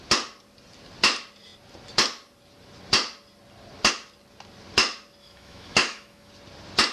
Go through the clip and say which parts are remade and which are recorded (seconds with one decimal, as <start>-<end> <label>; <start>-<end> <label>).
0.0-5.2 recorded; 5.2-6.3 remade; 6.3-6.9 recorded